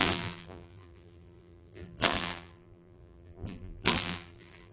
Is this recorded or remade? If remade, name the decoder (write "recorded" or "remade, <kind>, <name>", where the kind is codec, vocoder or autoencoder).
remade, vocoder, BigVGAN v2